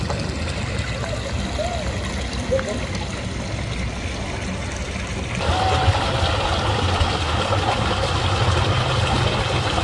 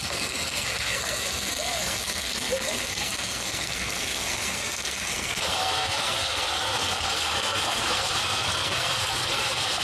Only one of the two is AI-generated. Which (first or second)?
second